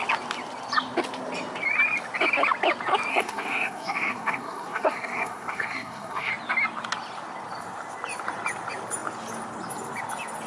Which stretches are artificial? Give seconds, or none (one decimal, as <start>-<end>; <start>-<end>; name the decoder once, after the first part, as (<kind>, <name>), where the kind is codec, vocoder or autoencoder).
3.1-6.3 (codec, SNAC)